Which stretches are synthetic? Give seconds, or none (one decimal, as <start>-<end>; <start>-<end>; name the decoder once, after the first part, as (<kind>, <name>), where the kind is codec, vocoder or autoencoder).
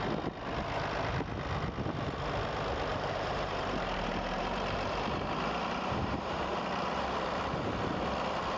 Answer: 2.9-6.6 (vocoder, BigVGAN v2)